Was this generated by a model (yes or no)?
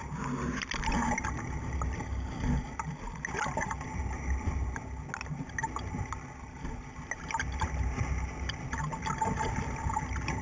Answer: no